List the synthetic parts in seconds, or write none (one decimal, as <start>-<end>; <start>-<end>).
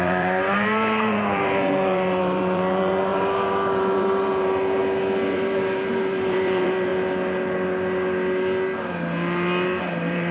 0.0-4.8; 5.3-6.9; 9.8-10.3